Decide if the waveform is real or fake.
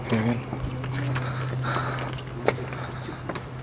real